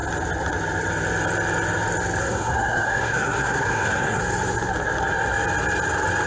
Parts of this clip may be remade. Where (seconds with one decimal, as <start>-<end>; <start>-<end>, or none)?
2.2-4.2